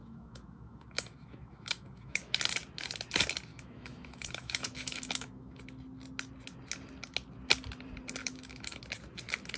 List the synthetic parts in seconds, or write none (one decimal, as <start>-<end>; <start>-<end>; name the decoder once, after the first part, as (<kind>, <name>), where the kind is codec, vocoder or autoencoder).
0.0-2.4 (autoencoder, DAC-VAE); 3.5-5.6; 8.2-8.8